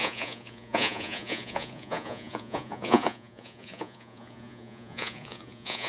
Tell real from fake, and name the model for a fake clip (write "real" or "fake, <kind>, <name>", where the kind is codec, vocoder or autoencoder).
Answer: fake, vocoder, Vocos